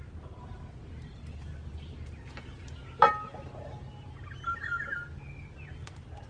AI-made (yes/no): no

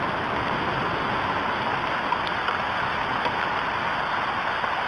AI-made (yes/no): no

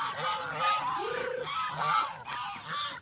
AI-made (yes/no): no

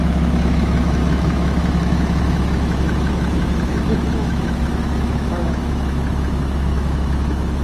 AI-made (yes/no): yes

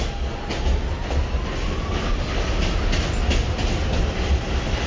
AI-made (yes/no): no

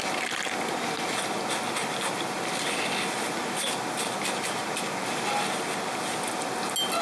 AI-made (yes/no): no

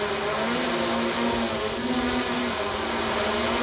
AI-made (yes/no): no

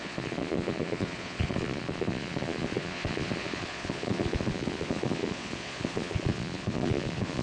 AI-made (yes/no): yes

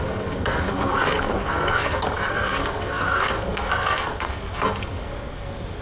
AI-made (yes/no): yes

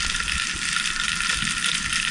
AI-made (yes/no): no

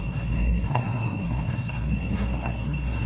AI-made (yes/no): yes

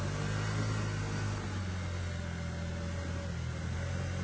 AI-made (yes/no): no